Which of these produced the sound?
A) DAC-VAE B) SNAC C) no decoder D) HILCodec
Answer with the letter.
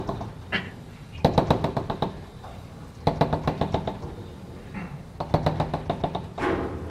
C